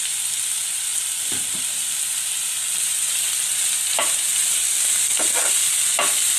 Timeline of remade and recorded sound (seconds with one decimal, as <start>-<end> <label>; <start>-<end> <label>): 0.0-6.4 recorded